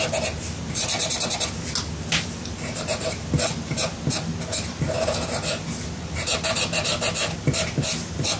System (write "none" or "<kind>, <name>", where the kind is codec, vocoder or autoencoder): none